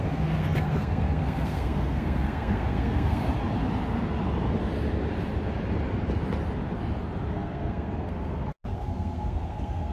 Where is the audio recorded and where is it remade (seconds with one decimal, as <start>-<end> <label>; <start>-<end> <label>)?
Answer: 0.0-3.3 remade; 3.3-7.3 recorded; 7.3-9.9 remade